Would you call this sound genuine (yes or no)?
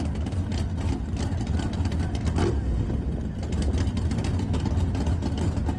yes